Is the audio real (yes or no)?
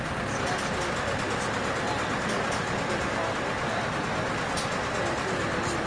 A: yes